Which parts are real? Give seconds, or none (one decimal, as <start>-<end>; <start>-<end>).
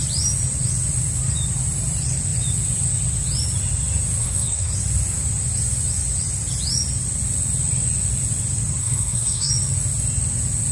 0.0-4.2; 4.7-8.8; 9.5-10.7